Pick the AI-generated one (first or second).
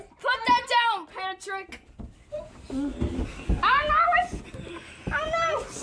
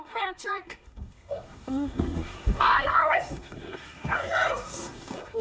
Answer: second